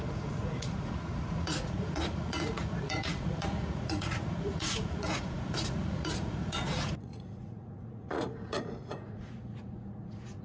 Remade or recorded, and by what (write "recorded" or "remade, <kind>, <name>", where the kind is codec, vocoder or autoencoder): remade, vocoder, Vocos